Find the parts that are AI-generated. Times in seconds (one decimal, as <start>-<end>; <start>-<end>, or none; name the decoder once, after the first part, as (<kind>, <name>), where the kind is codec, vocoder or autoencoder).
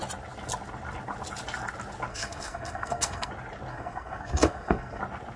2.1-3.3 (codec, SNAC); 3.7-5.0